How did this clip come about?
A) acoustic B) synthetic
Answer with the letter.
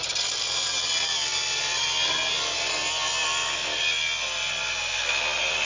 A